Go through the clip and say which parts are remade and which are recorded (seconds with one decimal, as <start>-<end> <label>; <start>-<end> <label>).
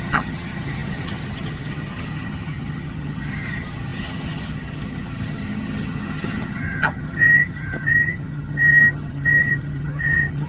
0.0-10.5 remade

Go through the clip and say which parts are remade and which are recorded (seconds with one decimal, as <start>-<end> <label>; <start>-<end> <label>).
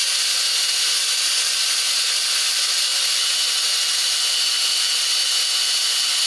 0.0-6.3 recorded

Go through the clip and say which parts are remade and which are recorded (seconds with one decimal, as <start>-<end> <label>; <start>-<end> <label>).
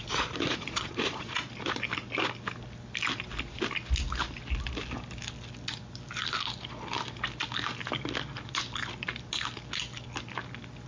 0.0-1.4 remade; 1.4-10.9 recorded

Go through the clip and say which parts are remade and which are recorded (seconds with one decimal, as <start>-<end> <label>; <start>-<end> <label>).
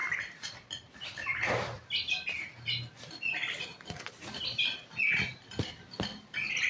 0.0-3.6 remade; 3.6-6.7 recorded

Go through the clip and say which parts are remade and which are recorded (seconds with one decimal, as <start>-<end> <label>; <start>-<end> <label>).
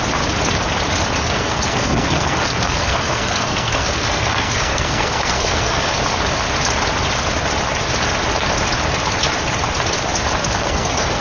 0.0-1.2 recorded; 1.2-6.0 remade; 6.0-10.4 recorded; 10.4-11.2 remade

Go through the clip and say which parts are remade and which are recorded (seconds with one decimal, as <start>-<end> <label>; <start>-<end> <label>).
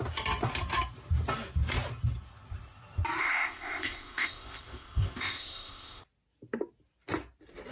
0.0-3.2 recorded; 3.2-6.0 remade; 6.0-7.7 recorded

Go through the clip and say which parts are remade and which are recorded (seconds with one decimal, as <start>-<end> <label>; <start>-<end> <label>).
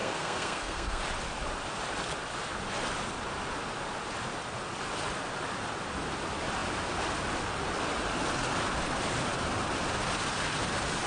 0.0-1.0 remade; 1.0-11.1 recorded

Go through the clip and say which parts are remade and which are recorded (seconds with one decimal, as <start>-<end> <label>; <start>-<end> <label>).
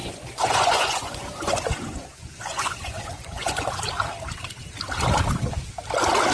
0.0-3.8 remade; 3.8-6.3 recorded